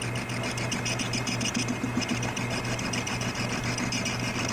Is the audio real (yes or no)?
yes